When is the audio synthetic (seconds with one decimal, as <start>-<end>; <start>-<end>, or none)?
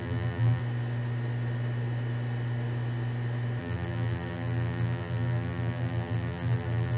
0.0-0.6; 3.6-7.0